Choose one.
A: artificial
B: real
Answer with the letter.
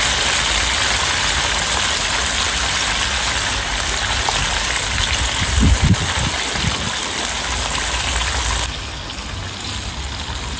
B